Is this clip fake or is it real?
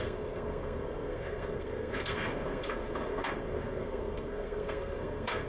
fake